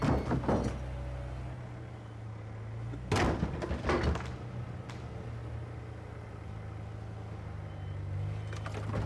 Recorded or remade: recorded